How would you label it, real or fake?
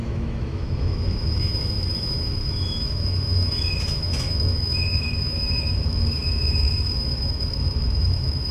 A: fake